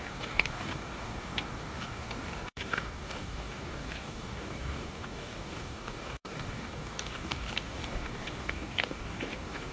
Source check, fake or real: fake